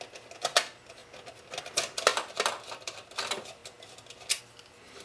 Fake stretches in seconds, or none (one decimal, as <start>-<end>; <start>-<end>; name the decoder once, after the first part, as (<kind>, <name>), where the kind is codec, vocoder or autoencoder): none